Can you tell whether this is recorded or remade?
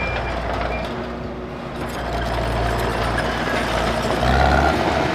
recorded